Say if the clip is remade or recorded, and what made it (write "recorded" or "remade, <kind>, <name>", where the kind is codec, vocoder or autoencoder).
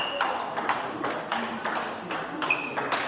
recorded